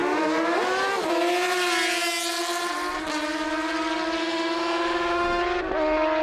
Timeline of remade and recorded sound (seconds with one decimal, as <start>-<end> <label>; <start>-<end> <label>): 0.0-4.2 recorded; 4.2-5.4 remade; 5.4-6.2 recorded